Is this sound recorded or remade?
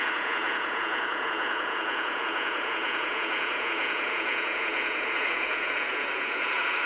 remade